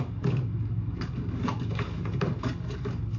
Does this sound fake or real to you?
fake